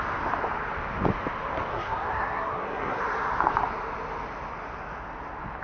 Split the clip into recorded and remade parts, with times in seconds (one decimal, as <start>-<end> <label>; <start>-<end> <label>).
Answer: 0.0-1.7 recorded; 1.7-3.0 remade; 3.0-5.6 recorded